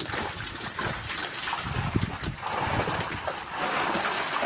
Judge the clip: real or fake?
real